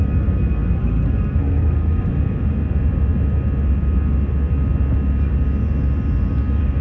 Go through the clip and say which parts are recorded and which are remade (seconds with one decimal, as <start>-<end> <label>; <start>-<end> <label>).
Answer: 0.0-0.8 recorded; 0.8-2.1 remade; 2.1-6.8 recorded